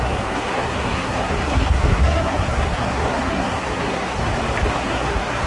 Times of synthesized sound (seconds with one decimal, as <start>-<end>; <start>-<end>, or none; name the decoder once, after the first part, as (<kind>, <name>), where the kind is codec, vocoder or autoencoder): 0.0-4.2 (codec, SNAC); 4.7-5.5